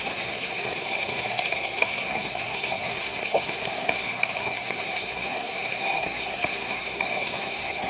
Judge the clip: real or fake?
fake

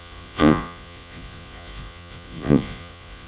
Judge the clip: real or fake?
fake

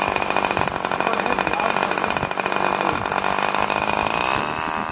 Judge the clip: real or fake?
real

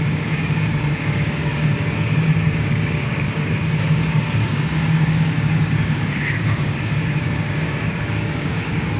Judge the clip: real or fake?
fake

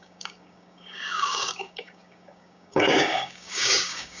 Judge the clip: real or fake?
fake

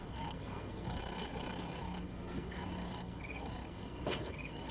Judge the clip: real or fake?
fake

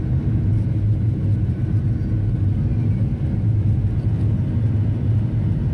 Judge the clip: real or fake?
real